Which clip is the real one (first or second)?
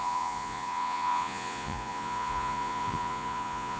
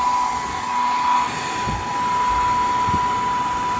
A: second